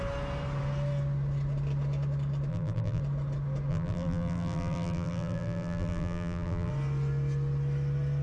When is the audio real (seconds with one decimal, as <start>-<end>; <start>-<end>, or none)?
0.0-2.5; 3.0-3.7; 6.7-8.2